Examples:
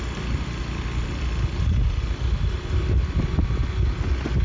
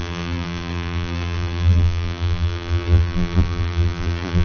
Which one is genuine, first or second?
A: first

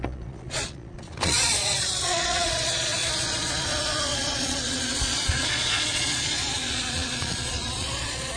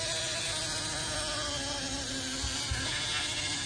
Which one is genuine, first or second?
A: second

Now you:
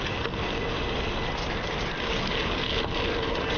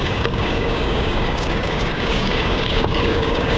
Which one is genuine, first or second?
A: first